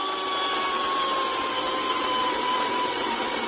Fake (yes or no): no